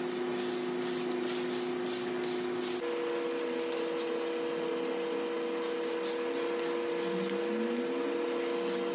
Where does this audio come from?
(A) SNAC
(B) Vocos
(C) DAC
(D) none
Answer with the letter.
D